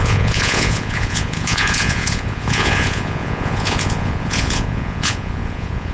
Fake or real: fake